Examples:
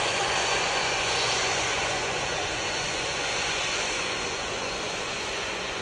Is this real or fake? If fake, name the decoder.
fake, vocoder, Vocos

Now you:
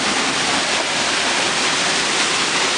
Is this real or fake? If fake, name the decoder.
real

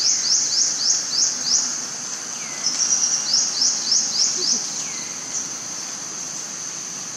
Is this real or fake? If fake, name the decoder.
real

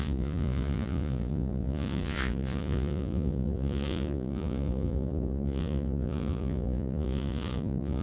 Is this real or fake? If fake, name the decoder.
fake, vocoder, Vocos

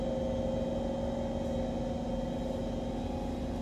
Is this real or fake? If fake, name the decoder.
real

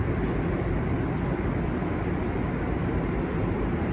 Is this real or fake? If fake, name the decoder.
real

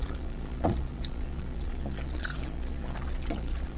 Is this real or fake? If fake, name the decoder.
fake, vocoder, Vocos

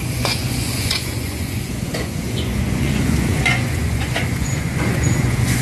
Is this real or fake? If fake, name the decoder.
fake, vocoder, Vocos